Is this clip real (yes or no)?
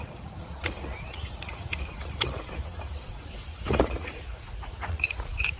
no